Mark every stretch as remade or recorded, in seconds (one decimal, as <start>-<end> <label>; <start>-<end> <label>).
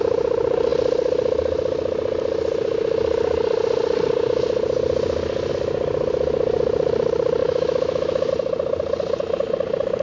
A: 0.0-7.4 recorded; 7.4-8.3 remade; 8.3-10.0 recorded